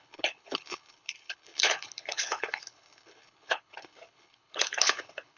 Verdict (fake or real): fake